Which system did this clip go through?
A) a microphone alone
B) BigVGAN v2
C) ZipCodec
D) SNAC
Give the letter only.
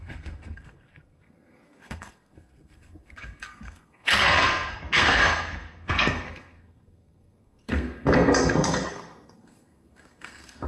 D